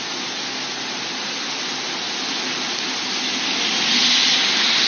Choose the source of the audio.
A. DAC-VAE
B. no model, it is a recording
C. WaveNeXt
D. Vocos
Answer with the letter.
B